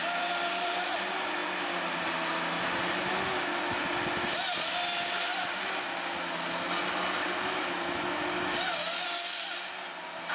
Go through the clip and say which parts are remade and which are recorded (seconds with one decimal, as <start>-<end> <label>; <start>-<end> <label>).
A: 0.0-3.1 recorded; 3.1-3.8 remade; 3.8-10.3 recorded